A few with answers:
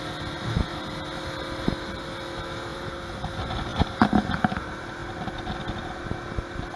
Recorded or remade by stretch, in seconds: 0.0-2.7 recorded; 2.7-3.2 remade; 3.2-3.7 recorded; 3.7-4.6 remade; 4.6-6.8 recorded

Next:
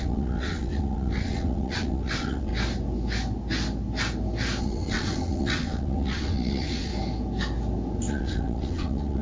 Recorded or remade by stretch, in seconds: 0.0-2.5 remade; 2.5-4.6 recorded; 4.6-6.9 remade; 6.9-8.1 recorded; 8.1-9.2 remade